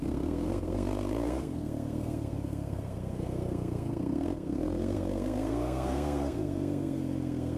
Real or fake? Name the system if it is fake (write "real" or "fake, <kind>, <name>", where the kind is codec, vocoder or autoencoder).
fake, codec, SNAC